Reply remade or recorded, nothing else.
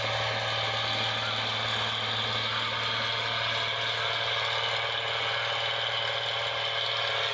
recorded